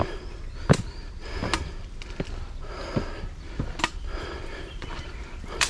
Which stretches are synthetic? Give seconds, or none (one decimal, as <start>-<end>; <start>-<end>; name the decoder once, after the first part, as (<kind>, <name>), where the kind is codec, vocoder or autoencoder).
0.0-1.0 (vocoder, BigVGAN v2); 4.0-5.7